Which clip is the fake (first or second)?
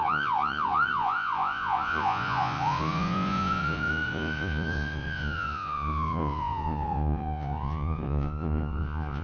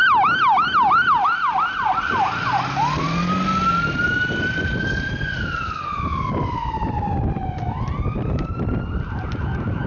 first